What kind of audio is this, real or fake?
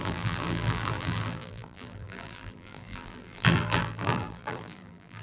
fake